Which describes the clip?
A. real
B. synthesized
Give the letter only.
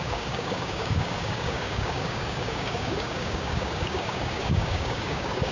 B